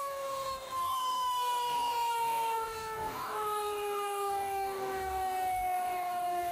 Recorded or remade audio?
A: remade